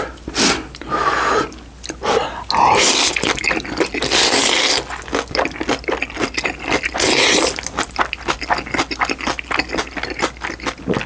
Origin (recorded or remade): recorded